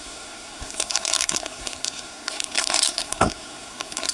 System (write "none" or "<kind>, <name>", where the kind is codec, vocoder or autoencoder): codec, SNAC